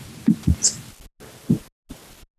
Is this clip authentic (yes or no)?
yes